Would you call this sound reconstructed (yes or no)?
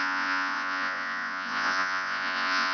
yes